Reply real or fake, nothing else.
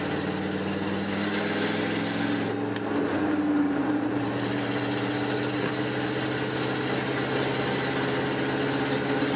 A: real